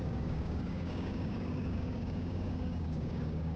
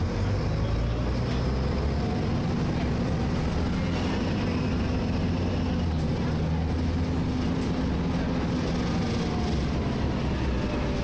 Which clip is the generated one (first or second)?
first